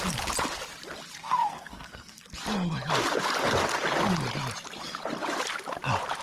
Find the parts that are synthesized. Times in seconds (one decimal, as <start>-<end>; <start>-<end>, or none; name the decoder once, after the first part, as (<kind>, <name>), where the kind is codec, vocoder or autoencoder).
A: 1.2-2.3 (codec, SNAC)

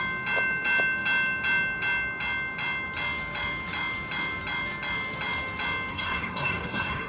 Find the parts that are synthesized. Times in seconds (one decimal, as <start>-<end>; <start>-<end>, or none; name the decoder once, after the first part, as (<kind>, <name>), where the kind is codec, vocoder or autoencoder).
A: 5.9-7.1 (codec, SNAC)

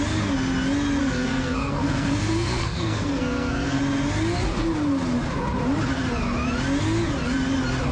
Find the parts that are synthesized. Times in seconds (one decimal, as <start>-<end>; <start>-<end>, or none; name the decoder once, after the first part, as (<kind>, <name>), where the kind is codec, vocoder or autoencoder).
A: 1.0-3.8 (codec, SNAC)

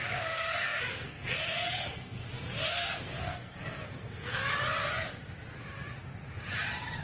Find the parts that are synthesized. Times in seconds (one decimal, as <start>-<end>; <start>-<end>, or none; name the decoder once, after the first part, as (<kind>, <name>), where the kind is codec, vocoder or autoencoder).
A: 0.0-2.2 (codec, SNAC); 2.7-4.4